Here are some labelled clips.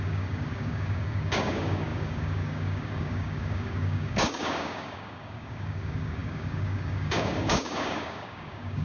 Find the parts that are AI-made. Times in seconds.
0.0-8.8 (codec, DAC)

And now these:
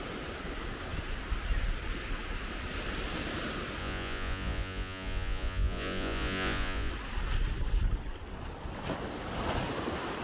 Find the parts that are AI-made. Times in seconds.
3.8-6.9 (vocoder, Vocos)

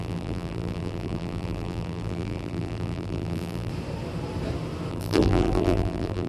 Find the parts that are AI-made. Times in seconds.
0.0-3.7 (vocoder, BigVGAN v2); 4.9-6.3

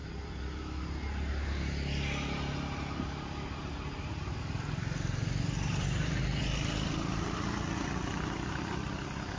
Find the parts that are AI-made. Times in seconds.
4.4-9.4 (vocoder, BigVGAN v2)

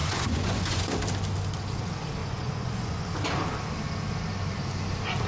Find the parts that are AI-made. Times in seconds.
0.0-0.8 (vocoder, Vocos); 2.2-3.0